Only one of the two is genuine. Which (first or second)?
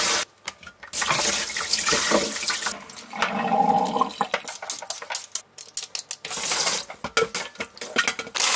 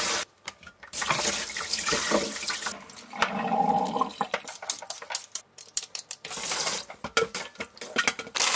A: first